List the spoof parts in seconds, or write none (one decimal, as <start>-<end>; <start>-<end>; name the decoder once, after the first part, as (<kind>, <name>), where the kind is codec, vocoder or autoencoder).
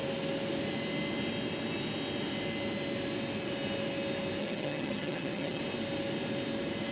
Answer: 4.4-5.6 (vocoder, HiFi-GAN)